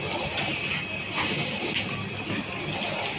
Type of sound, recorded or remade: recorded